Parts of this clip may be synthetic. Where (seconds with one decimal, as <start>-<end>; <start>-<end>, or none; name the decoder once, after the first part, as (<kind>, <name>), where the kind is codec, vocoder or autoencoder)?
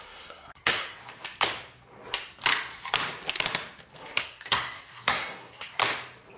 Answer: 0.0-1.0 (codec, SNAC); 4.0-5.8